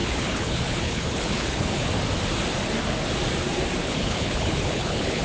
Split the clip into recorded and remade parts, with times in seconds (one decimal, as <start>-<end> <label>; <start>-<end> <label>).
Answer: 0.0-1.9 remade; 1.9-3.8 recorded; 3.8-5.2 remade